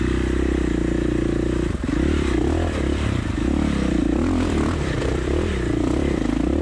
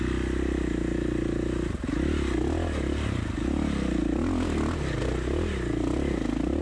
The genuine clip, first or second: second